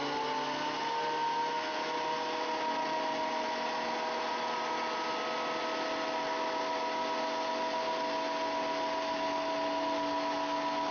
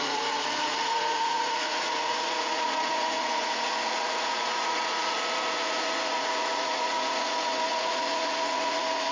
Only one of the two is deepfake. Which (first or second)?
second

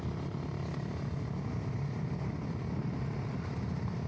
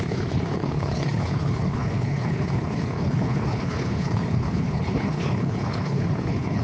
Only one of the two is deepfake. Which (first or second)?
second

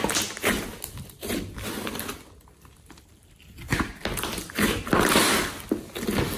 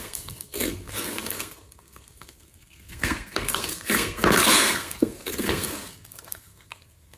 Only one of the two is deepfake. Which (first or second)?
second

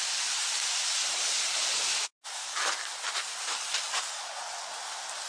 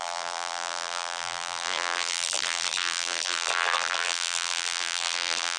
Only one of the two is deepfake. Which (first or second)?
second